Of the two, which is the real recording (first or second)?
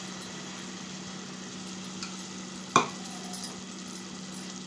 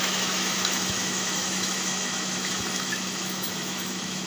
first